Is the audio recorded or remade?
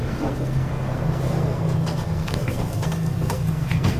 remade